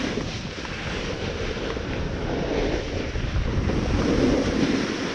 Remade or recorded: recorded